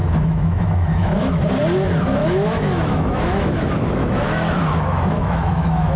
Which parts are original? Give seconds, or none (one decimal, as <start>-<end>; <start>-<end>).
1.4-2.2